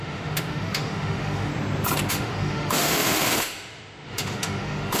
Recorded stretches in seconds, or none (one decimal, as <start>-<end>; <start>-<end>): 1.5-2.1